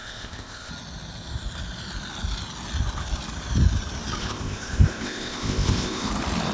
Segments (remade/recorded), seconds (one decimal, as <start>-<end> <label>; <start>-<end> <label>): 0.0-0.7 remade; 0.7-4.2 recorded; 4.2-6.1 remade; 6.1-6.5 recorded